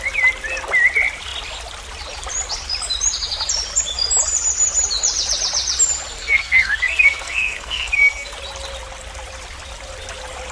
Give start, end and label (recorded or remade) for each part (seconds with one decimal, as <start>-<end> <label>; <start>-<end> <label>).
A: 0.0-6.2 recorded; 6.2-8.3 remade; 8.3-10.5 recorded